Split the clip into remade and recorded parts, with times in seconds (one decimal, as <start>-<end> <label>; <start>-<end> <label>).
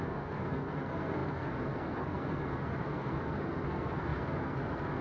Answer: 0.0-5.0 remade